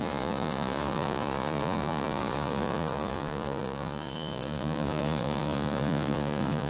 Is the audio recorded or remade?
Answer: remade